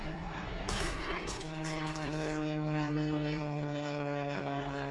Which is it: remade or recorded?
remade